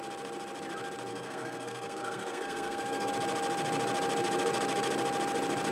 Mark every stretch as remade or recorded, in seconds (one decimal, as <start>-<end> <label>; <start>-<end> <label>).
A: 0.0-1.1 recorded; 1.1-3.1 remade; 3.1-5.7 recorded